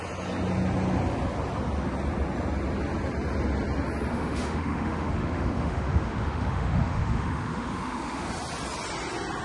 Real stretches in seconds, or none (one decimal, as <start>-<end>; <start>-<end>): 0.0-4.1; 8.3-9.4